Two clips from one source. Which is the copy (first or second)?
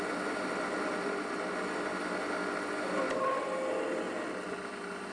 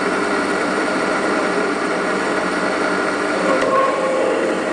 second